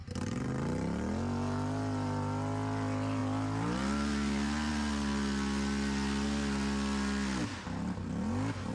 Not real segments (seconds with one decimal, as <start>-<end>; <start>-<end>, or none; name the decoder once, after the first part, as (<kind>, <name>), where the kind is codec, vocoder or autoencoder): none